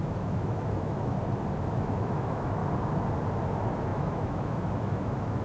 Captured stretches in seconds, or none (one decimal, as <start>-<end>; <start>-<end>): 1.1-1.7; 2.6-3.5